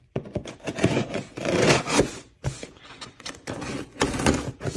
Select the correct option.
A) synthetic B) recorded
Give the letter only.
A